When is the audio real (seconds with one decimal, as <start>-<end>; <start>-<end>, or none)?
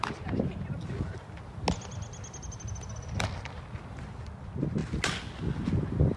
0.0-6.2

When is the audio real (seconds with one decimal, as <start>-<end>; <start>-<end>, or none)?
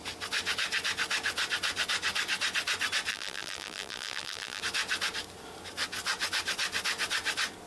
0.0-3.1; 4.6-7.7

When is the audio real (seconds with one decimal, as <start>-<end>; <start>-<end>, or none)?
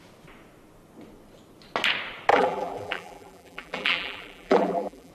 0.0-2.3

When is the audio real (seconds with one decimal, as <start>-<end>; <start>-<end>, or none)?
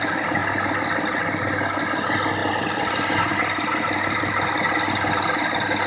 0.0-0.4; 1.2-2.4